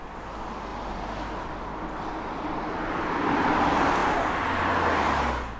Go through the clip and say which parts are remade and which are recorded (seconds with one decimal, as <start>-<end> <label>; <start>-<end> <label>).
0.0-5.6 recorded